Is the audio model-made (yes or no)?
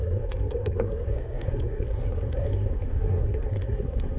yes